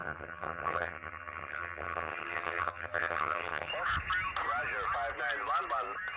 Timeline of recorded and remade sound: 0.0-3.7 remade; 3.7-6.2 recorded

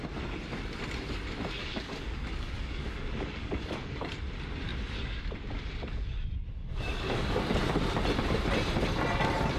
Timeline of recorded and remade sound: 0.0-1.6 recorded; 1.6-4.1 remade; 4.1-6.6 recorded; 6.6-7.4 remade; 7.4-9.6 recorded

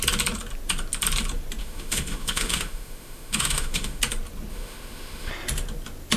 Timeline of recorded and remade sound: 0.0-1.6 recorded; 1.6-4.0 remade; 4.0-4.5 recorded; 4.5-5.3 remade; 5.3-6.2 recorded